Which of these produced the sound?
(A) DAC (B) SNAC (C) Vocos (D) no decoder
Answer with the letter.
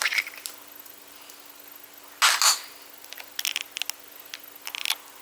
D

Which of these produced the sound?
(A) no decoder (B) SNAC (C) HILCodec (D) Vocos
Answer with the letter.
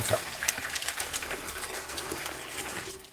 B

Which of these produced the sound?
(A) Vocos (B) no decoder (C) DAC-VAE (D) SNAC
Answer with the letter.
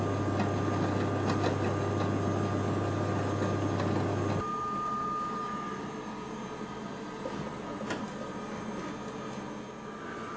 B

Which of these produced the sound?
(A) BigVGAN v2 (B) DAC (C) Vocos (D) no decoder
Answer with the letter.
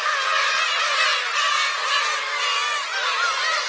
D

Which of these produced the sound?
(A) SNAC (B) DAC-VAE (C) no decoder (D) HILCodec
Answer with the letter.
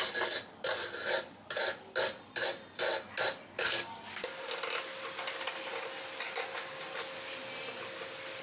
C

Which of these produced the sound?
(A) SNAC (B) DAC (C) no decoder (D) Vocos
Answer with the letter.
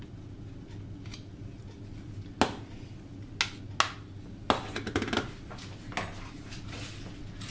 C